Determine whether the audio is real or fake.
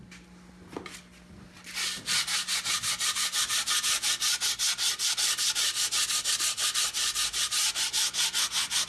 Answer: real